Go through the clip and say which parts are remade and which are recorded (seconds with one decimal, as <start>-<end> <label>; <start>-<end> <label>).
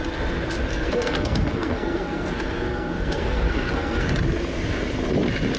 0.0-0.7 recorded; 0.7-4.1 remade; 4.1-5.6 recorded